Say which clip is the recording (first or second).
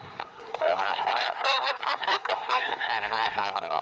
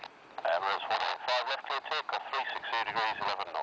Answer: second